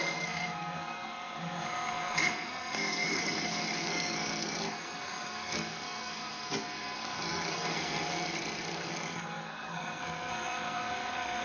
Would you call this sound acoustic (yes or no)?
no